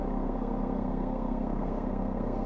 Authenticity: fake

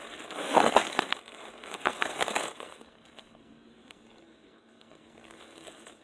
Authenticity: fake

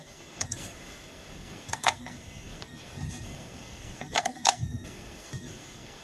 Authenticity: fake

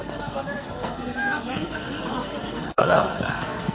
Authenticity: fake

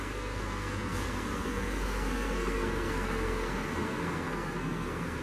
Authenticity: fake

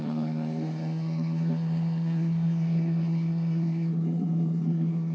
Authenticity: fake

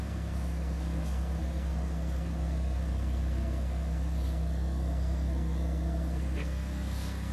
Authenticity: fake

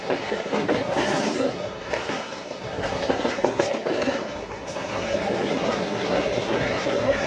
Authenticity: fake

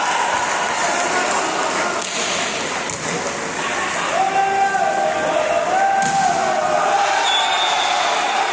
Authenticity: real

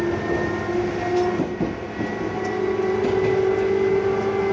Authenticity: real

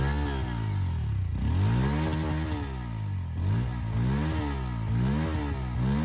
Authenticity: real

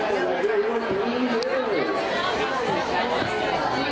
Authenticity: real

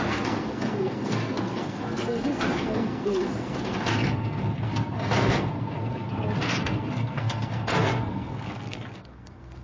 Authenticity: fake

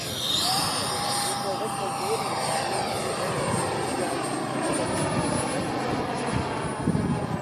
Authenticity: real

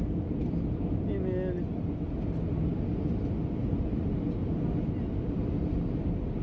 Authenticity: real